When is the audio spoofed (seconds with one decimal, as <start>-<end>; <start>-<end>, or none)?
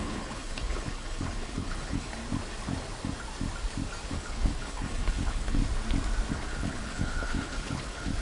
0.0-2.2; 4.1-5.6; 6.3-8.2